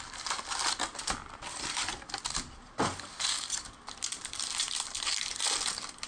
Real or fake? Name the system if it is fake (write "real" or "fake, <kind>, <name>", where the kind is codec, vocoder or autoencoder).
fake, vocoder, BigVGAN v2